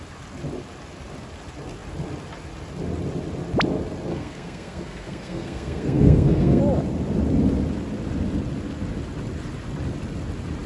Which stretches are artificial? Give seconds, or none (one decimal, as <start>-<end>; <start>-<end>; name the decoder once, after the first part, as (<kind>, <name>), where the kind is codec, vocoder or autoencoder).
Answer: 4.1-6.6 (codec, SNAC)